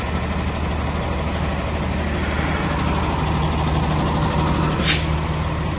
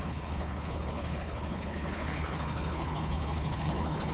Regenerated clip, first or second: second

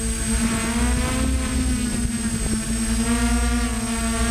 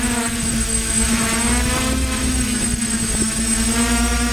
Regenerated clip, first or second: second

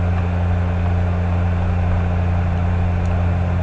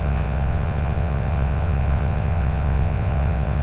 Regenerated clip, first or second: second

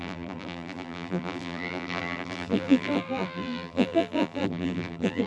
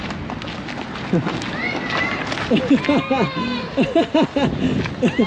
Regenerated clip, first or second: first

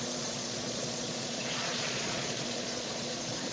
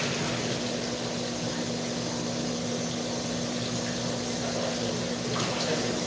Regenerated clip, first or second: first